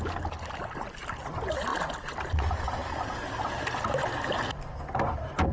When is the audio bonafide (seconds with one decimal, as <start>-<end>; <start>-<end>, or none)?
0.0-5.5